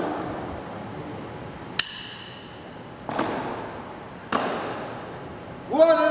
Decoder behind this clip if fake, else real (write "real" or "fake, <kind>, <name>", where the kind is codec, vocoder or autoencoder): real